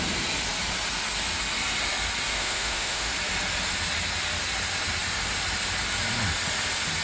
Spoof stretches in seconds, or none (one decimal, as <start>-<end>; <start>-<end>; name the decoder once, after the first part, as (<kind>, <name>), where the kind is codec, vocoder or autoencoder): 2.3-3.1 (autoencoder, DAC-VAE)